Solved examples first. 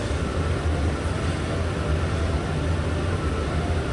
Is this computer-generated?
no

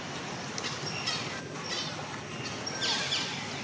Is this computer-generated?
no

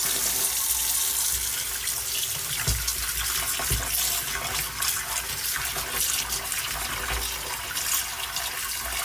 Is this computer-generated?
no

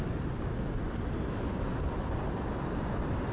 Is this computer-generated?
no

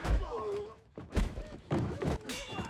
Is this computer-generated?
yes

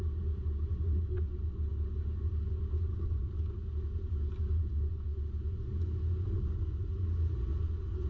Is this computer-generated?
no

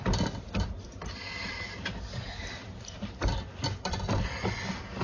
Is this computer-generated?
no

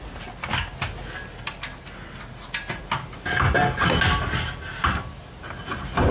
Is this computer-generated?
no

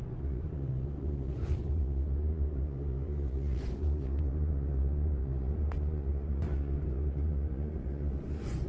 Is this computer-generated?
yes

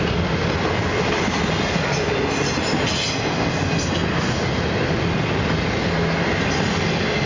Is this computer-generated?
no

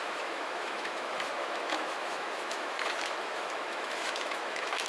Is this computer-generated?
yes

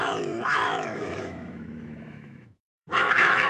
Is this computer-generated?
yes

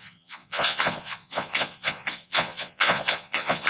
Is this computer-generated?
yes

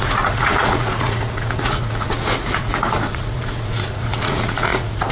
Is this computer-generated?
yes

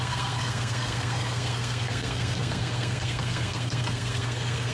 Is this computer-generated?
yes